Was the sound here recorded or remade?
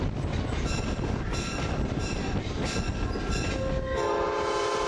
recorded